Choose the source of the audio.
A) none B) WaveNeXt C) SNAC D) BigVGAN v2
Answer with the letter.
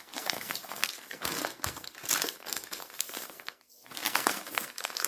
C